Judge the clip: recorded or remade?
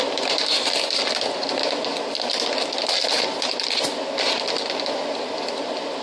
recorded